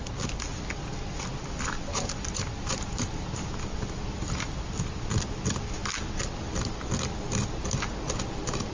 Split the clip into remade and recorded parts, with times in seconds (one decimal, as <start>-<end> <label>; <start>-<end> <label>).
0.0-8.7 recorded